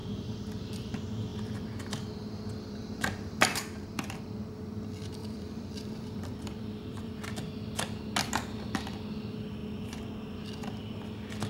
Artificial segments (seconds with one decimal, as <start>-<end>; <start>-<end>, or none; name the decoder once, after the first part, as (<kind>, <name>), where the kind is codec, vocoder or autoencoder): 0.0-0.9 (vocoder, BigVGAN v2); 1.3-4.2; 5.2-7.1